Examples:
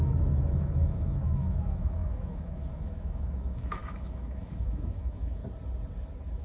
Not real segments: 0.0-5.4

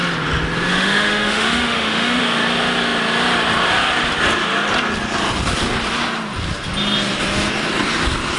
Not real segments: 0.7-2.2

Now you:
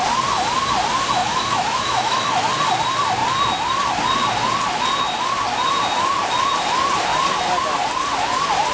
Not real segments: 1.2-2.5

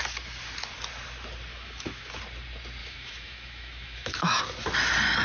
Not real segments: 1.5-2.1; 2.8-4.4